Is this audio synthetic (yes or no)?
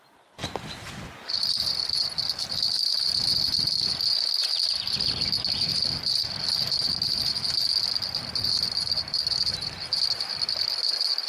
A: no